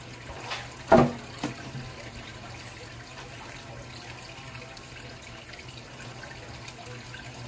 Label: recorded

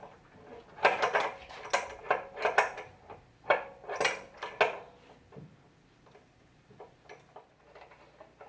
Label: recorded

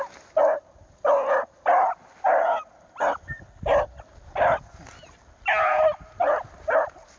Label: recorded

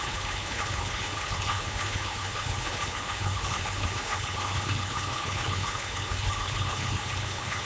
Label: remade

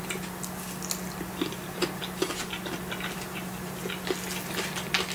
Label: recorded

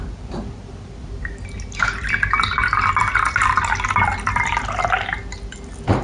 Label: recorded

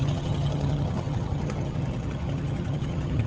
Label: remade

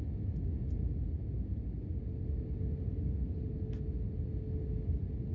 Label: recorded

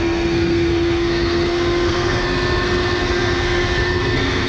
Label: remade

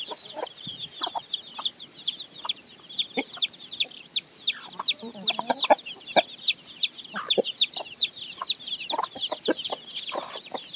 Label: remade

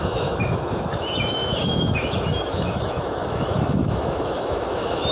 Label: remade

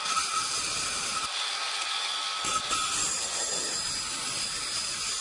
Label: recorded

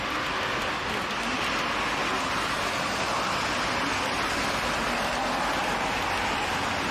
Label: recorded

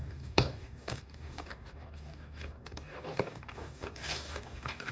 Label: remade